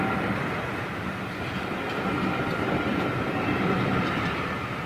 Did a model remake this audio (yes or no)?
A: no